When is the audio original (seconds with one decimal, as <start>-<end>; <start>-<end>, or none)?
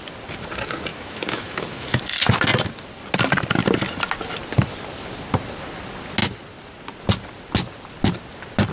0.0-0.9; 2.0-8.7